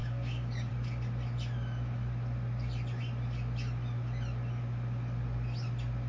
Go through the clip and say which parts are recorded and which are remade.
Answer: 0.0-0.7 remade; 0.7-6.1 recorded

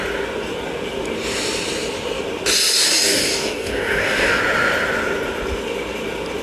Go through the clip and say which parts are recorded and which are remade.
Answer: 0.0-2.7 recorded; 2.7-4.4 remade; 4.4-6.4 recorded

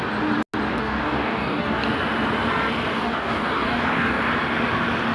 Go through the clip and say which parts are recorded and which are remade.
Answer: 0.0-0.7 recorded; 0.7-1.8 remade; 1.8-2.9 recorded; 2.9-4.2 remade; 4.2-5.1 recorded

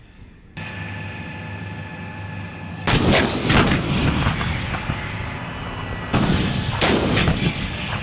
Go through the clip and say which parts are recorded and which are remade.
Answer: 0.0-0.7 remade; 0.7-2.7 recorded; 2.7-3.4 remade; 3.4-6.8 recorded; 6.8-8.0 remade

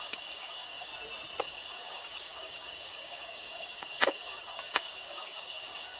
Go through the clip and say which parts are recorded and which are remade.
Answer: 0.0-0.9 remade; 0.9-1.4 recorded; 1.4-6.0 remade

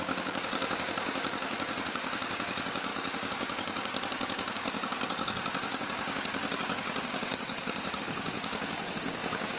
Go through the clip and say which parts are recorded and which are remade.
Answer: 0.0-9.6 remade